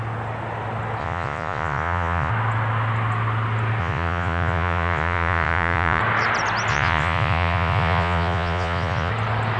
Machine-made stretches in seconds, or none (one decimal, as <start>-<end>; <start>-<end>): 1.0-2.3; 3.8-6.0; 6.7-9.1